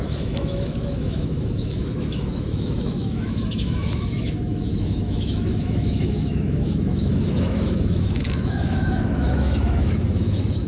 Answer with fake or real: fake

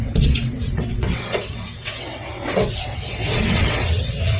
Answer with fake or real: fake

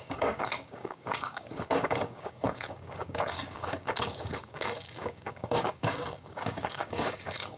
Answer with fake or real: fake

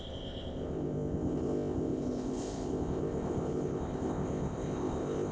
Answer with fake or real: fake